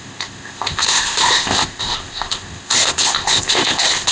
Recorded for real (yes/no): no